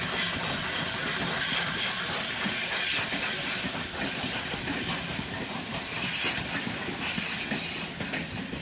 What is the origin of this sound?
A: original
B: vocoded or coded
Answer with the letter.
A